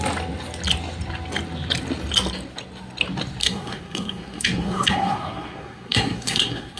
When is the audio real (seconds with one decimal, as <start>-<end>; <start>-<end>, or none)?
0.0-3.4